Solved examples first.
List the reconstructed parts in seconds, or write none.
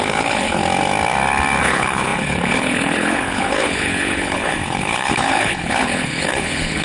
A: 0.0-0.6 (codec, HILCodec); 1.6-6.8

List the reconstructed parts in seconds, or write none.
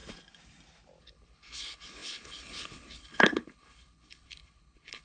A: 1.0-5.0 (codec, HILCodec)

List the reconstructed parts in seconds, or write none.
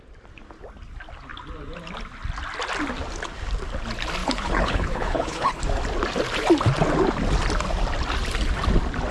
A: 4.2-5.6 (codec, HILCodec)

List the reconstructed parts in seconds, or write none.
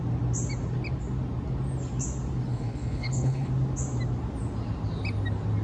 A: 2.5-3.5 (codec, HILCodec)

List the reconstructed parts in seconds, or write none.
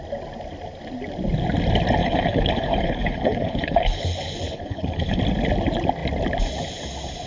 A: 2.0-5.2 (codec, HILCodec)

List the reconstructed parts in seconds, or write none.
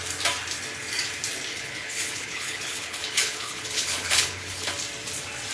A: 1.5-4.7 (codec, HILCodec)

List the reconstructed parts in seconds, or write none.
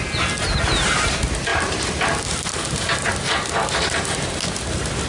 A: none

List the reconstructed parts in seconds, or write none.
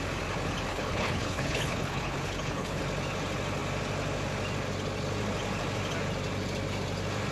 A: 0.7-2.8 (codec, HILCodec)